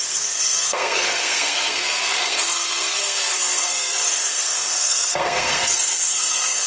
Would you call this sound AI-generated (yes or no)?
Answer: yes